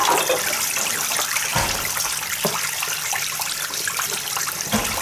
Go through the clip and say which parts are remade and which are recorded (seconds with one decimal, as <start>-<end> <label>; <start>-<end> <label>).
0.0-5.0 remade